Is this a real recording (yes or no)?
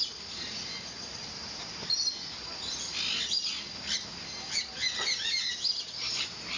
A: yes